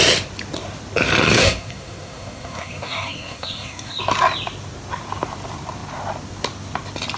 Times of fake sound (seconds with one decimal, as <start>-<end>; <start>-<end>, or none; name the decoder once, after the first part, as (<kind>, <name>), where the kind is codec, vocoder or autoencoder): 1.2-4.0 (codec, SNAC)